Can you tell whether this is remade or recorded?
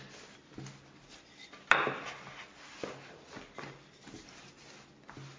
recorded